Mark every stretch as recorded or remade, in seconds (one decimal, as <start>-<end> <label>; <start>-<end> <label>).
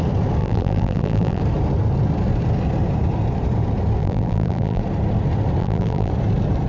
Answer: 0.0-0.4 recorded; 0.4-1.4 remade; 1.4-4.0 recorded; 4.0-4.8 remade; 4.8-5.6 recorded; 5.6-6.1 remade; 6.1-6.7 recorded